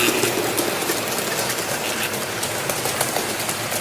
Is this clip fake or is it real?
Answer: real